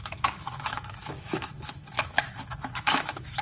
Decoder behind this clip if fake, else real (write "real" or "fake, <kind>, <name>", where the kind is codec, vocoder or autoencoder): fake, autoencoder, DAC-VAE